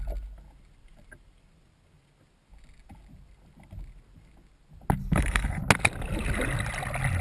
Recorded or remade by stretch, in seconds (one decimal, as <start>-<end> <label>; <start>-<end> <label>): 0.0-5.0 recorded; 5.0-5.6 remade; 5.6-7.2 recorded